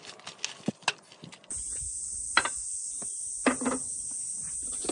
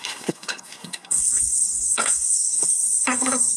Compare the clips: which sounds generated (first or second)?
second